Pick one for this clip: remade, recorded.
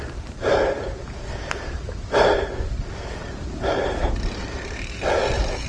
remade